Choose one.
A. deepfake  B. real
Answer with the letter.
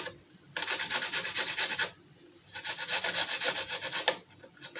B